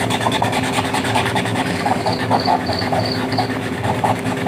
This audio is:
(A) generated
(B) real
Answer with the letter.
A